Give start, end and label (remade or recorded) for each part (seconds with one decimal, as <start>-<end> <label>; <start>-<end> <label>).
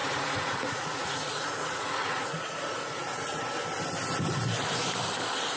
0.0-3.4 remade; 3.4-5.6 recorded